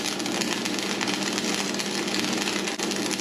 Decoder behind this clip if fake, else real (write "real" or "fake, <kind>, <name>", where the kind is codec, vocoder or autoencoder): real